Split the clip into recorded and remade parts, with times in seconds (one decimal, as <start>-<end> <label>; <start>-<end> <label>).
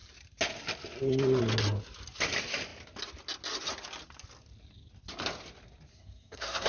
0.0-5.9 recorded; 5.9-6.7 remade